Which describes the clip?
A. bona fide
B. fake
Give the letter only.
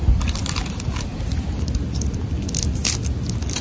A